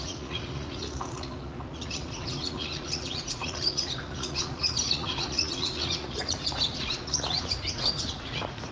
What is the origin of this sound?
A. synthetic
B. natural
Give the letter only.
A